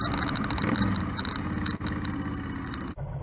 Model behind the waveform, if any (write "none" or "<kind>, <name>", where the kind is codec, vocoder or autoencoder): none